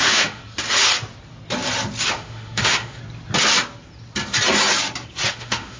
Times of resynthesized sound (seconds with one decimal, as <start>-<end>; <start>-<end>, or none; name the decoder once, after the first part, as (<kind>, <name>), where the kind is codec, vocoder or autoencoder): 0.0-0.4 (autoencoder, DAC-VAE); 2.1-3.0; 5.3-5.8